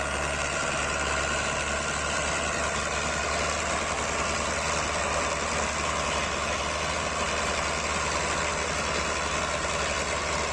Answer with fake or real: real